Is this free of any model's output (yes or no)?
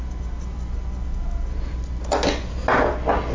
yes